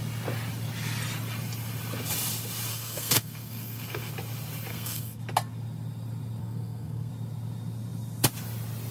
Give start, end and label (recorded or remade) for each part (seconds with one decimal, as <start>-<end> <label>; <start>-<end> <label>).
0.0-2.7 recorded; 2.7-4.1 remade; 4.1-4.7 recorded; 4.7-5.2 remade; 5.2-6.4 recorded; 6.4-7.1 remade; 7.1-8.9 recorded